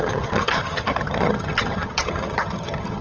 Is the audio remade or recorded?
remade